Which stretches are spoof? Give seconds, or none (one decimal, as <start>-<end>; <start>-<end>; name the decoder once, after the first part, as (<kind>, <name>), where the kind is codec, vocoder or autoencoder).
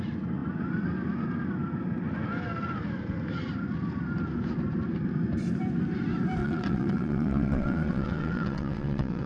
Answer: 6.4-9.3 (vocoder, WaveNeXt)